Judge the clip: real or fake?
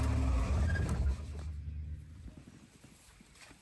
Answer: real